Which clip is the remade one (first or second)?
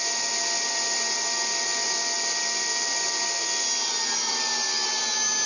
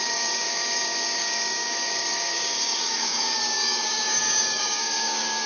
second